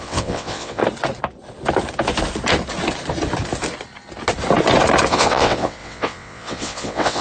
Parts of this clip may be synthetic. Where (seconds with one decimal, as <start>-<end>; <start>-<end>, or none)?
0.0-0.8; 5.1-7.2